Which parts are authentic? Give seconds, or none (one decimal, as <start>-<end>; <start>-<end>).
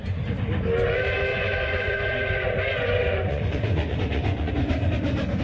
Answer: 0.0-1.3; 4.5-5.4